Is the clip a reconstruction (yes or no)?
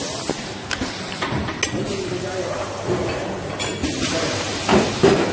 no